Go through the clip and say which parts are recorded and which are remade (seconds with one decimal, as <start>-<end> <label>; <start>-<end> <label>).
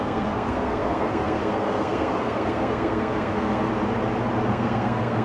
0.0-3.7 remade; 3.7-4.5 recorded; 4.5-5.2 remade